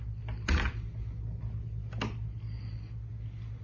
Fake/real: real